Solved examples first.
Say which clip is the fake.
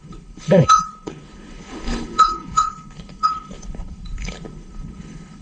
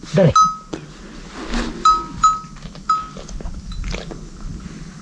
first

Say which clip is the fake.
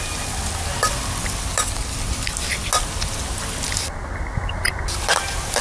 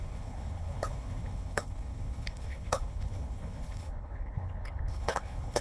second